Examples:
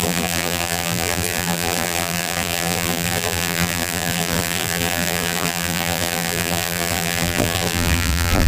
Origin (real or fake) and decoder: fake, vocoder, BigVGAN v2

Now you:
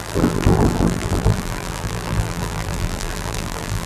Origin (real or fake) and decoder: fake, vocoder, BigVGAN v2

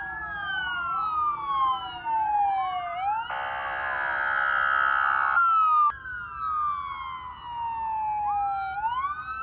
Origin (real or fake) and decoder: real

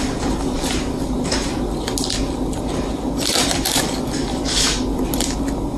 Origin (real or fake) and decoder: real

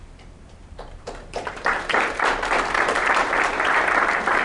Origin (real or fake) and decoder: fake, vocoder, BigVGAN v2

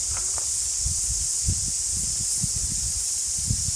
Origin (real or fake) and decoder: real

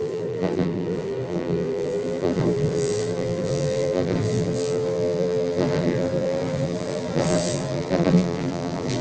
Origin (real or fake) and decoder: fake, vocoder, BigVGAN v2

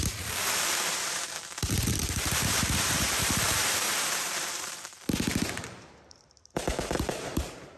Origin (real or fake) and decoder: fake, vocoder, BigVGAN v2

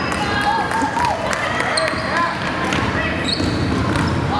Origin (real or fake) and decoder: real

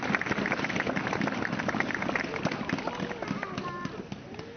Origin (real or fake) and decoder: real